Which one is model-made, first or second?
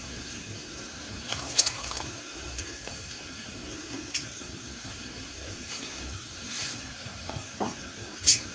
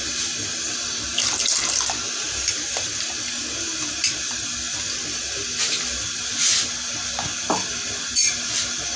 first